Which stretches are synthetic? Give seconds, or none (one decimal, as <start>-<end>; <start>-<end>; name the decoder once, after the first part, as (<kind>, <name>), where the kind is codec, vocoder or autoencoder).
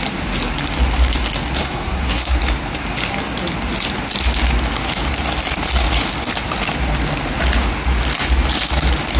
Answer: 1.6-2.4 (codec, SNAC)